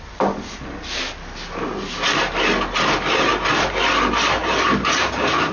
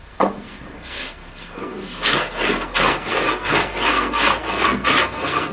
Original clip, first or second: first